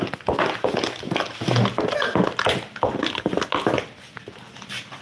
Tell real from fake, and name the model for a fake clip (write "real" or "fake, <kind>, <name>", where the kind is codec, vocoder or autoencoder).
real